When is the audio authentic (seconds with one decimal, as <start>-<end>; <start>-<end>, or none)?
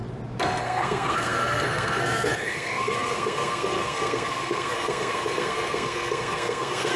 0.0-0.6